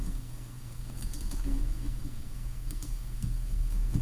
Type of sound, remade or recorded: remade